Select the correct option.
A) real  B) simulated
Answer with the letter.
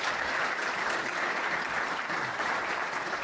A